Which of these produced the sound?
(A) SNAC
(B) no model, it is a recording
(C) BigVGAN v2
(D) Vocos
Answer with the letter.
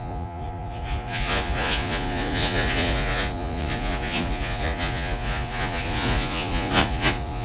D